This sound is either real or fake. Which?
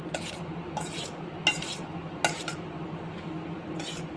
real